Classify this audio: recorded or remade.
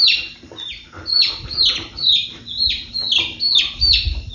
recorded